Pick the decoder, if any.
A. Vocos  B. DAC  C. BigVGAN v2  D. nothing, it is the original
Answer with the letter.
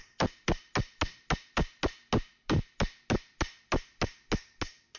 D